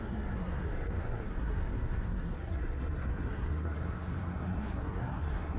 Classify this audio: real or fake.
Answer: fake